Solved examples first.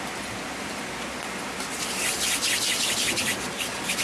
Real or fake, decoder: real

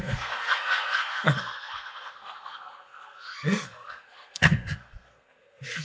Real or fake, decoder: fake, codec, SNAC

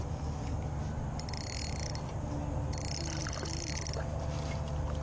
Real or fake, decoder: real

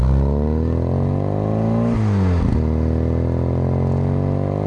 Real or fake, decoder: real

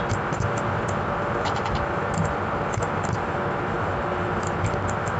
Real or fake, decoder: real